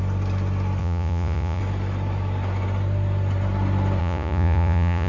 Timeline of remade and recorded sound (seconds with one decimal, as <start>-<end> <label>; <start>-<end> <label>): 0.0-0.8 recorded; 0.8-1.6 remade; 1.6-4.0 recorded; 4.0-5.1 remade